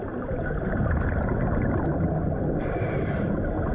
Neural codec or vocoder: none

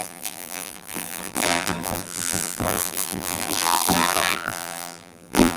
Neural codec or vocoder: vocoder, BigVGAN v2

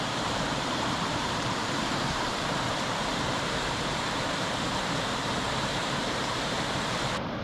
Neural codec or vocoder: vocoder, BigVGAN v2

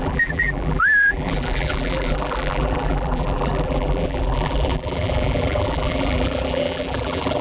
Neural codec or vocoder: vocoder, BigVGAN v2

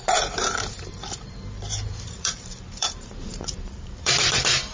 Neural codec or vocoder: vocoder, BigVGAN v2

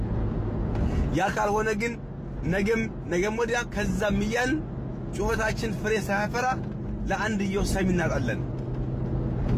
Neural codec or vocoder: none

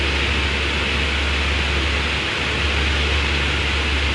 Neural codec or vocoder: none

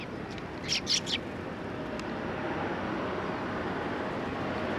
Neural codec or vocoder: none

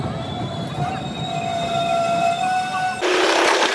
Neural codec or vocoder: none